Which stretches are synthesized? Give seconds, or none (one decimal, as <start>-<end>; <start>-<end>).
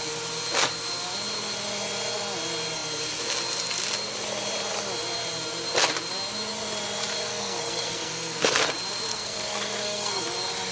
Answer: 7.3-8.7; 9.1-10.2